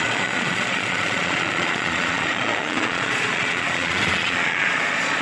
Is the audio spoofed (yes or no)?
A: yes